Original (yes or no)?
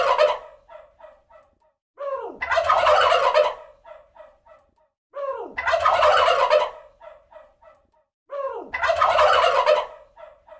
yes